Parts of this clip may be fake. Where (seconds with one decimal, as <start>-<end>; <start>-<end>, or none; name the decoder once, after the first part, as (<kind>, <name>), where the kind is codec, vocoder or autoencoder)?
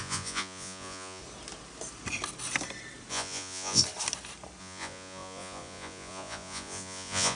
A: 0.0-1.2 (vocoder, Vocos); 3.1-3.8; 4.6-7.4